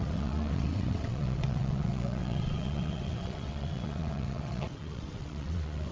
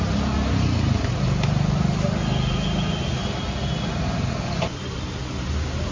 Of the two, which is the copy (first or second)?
first